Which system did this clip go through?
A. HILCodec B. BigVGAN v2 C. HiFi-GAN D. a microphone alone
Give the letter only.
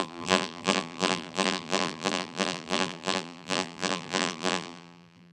B